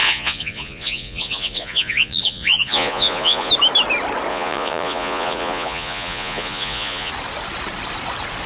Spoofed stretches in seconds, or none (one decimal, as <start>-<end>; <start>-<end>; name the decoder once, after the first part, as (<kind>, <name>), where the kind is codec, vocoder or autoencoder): 0.0-3.5 (vocoder, Vocos); 4.3-7.1